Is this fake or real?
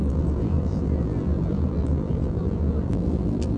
fake